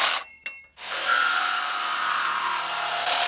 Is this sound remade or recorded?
recorded